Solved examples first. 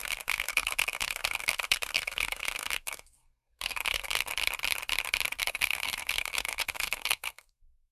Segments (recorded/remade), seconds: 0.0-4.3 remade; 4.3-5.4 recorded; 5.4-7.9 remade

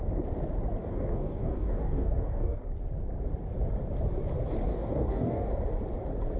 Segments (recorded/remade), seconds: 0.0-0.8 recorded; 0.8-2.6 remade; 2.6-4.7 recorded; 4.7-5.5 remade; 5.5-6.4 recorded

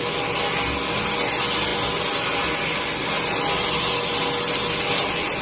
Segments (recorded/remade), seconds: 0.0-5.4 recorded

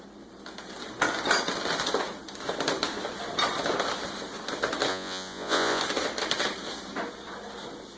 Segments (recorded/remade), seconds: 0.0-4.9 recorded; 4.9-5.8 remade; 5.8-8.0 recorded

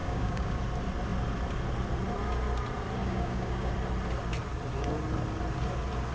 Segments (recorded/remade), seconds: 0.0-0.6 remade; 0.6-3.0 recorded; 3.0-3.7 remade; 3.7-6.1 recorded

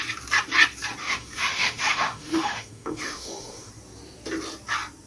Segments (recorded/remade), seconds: 0.0-1.0 recorded; 1.0-3.7 remade; 3.7-5.1 recorded

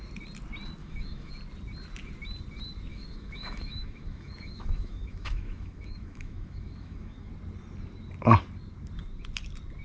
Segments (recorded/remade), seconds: 0.0-0.8 recorded; 0.8-1.3 remade; 1.3-2.9 recorded; 2.9-7.3 remade; 7.3-9.8 recorded